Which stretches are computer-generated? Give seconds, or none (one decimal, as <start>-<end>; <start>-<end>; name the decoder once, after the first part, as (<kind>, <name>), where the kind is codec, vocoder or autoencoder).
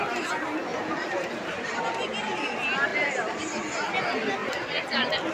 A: 0.7-1.8 (vocoder, BigVGAN v2); 2.9-3.7; 4.4-5.3